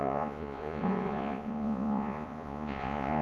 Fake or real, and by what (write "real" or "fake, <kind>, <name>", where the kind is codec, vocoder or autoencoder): fake, vocoder, Vocos